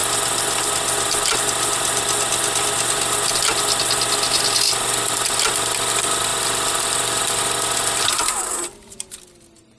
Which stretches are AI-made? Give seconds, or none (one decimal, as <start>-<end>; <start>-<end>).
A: none